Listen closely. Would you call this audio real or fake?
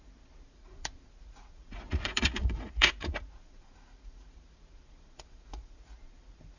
fake